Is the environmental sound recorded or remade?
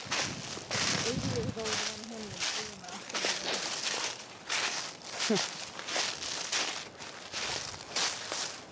recorded